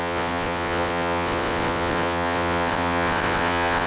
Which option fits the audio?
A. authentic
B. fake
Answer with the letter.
B